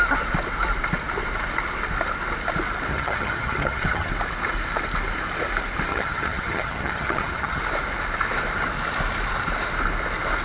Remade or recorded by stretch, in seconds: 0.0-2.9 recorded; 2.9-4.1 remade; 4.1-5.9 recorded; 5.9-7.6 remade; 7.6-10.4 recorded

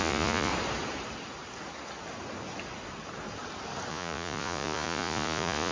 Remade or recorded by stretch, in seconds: 0.0-0.5 remade; 0.5-3.9 recorded; 3.9-5.7 remade